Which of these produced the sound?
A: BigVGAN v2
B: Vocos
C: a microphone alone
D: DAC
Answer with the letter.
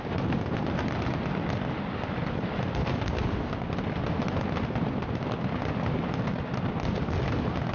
C